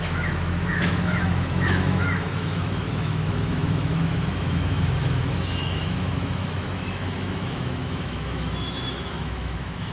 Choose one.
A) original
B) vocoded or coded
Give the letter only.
B